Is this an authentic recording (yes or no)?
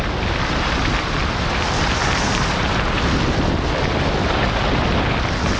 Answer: yes